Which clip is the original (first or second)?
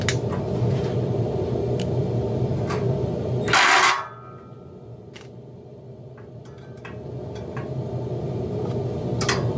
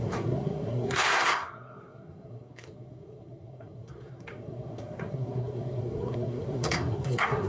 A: first